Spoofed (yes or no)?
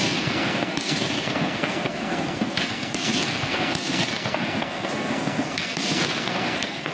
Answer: yes